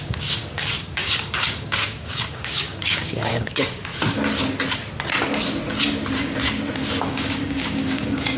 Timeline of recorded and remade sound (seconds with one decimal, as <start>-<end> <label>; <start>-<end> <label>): 0.0-3.9 remade; 3.9-7.0 recorded; 7.0-8.4 remade